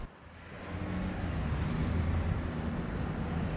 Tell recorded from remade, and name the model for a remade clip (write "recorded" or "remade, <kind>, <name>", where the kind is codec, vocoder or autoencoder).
recorded